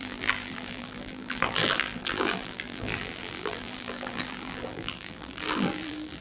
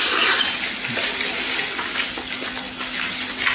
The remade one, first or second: first